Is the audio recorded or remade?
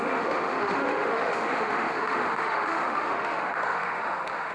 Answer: remade